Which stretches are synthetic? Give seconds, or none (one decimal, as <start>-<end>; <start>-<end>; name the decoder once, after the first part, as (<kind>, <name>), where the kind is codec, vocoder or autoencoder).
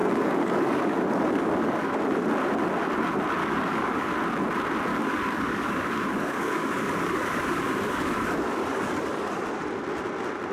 0.0-2.0 (codec, DAC); 3.4-4.1; 4.9-9.4